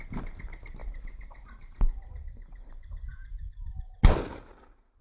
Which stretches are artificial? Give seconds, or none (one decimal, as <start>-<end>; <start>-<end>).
0.8-2.2